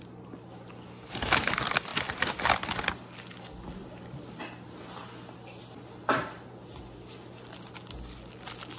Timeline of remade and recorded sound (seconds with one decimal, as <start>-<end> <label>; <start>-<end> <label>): 0.0-8.8 recorded